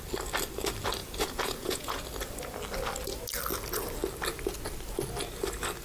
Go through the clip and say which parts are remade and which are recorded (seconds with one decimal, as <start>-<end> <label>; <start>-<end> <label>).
0.0-1.0 recorded; 1.0-2.0 remade; 2.0-5.8 recorded